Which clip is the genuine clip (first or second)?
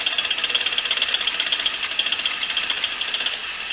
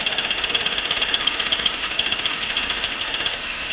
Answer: first